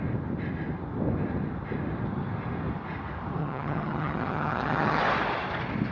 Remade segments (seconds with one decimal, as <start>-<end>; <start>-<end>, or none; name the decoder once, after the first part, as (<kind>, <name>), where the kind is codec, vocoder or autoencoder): 3.4-5.0 (vocoder, HiFi-GAN)